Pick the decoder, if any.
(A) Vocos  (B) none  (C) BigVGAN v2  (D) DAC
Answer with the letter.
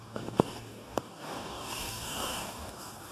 D